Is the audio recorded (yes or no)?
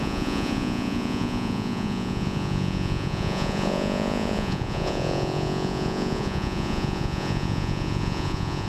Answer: no